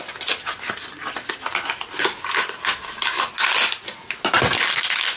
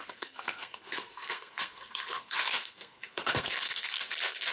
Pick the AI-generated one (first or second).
second